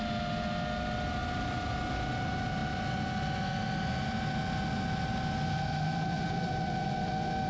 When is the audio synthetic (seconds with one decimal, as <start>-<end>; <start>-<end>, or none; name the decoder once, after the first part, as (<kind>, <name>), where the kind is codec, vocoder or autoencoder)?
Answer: none